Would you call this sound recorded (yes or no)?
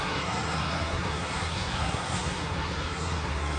no